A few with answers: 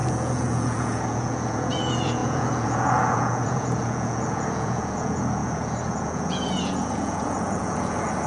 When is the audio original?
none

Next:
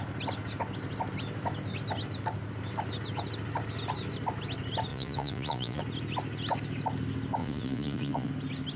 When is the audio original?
0.0-4.9; 5.8-7.4; 8.3-8.8

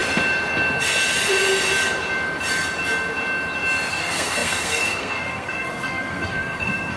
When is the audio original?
0.0-3.9

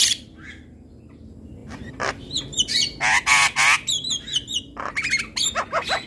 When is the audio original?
0.0-1.6; 5.2-6.1